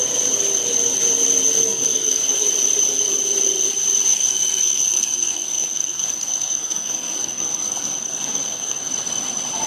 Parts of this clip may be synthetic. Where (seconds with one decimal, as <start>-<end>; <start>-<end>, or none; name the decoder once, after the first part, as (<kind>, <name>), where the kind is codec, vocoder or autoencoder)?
1.6-2.5 (codec, SNAC); 4.1-8.9